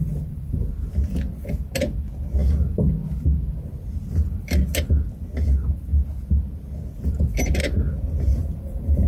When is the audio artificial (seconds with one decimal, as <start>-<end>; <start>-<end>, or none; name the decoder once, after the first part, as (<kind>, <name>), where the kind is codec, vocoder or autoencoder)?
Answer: 0.0-0.7 (vocoder, BigVGAN v2); 8.3-9.1